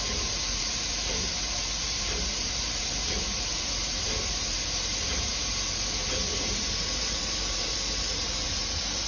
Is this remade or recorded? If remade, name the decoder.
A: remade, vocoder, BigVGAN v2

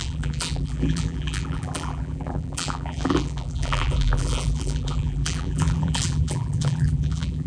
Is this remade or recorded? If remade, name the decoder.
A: remade, vocoder, BigVGAN v2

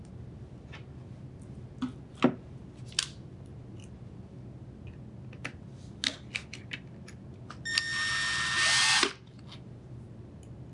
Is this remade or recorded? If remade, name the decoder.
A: recorded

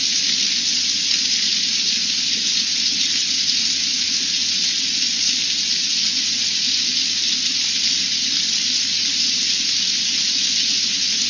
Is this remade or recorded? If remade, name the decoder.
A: recorded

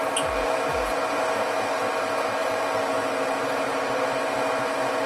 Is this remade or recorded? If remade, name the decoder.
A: recorded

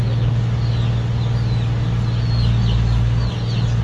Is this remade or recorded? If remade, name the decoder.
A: recorded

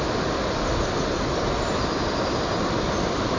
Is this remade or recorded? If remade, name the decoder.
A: recorded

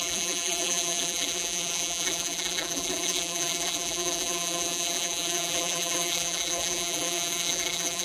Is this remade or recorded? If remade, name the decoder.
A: remade, vocoder, BigVGAN v2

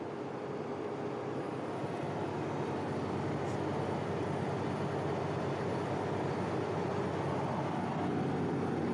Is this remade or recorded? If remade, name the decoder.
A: recorded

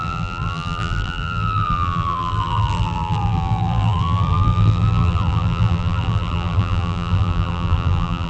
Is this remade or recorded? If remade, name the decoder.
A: remade, vocoder, BigVGAN v2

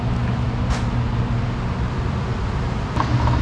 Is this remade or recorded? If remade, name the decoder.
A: recorded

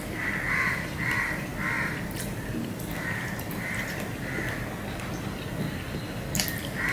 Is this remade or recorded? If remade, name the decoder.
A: recorded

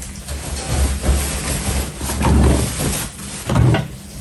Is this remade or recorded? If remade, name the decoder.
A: recorded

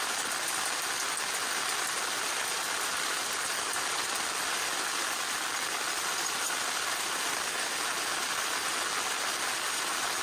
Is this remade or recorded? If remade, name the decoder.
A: recorded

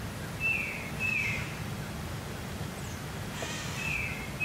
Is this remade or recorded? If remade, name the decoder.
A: recorded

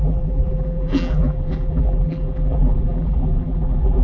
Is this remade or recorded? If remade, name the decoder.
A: remade, vocoder, BigVGAN v2